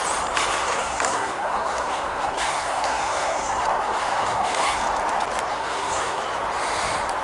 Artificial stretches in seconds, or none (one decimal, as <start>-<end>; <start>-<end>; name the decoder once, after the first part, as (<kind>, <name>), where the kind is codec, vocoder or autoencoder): 0.5-4.8 (codec, SNAC); 5.5-6.2